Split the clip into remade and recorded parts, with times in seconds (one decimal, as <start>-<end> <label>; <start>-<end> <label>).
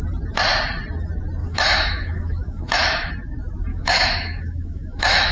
0.0-1.4 recorded; 1.4-3.1 remade; 3.1-3.7 recorded; 3.7-5.3 remade